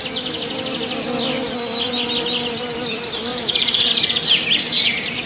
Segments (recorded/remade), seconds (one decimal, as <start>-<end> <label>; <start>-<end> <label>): 0.0-3.3 recorded; 3.3-3.9 remade; 3.9-5.3 recorded

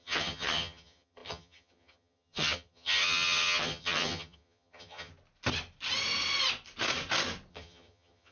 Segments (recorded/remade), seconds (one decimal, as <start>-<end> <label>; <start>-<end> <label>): 0.0-5.1 remade; 5.1-7.5 recorded; 7.5-8.3 remade